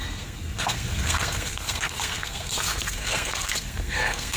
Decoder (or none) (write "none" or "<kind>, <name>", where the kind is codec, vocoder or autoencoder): codec, SNAC